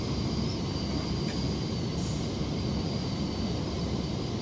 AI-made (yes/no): no